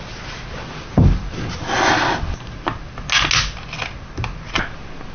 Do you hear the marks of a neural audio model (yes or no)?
no